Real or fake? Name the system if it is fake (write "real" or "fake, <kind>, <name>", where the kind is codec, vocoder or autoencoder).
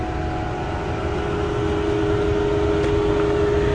real